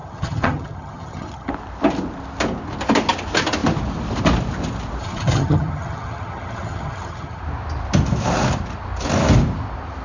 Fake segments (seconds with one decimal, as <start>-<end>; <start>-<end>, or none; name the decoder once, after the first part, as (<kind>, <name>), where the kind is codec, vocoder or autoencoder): 0.0-1.5 (vocoder, HiFi-GAN); 5.0-7.4